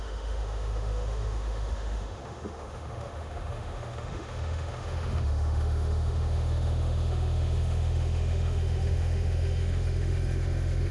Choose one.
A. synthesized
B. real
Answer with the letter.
A